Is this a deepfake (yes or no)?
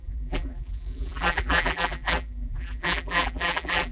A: yes